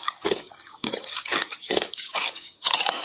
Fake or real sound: fake